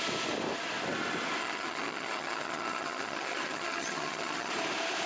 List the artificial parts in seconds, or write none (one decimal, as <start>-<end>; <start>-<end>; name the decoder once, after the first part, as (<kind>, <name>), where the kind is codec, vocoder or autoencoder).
1.4-4.5 (vocoder, HiFi-GAN)